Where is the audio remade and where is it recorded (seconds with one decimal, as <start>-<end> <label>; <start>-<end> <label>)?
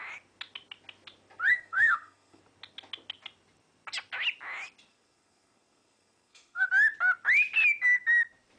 0.0-1.5 recorded; 1.5-2.4 remade; 2.4-4.9 recorded; 4.9-6.7 remade; 6.7-8.6 recorded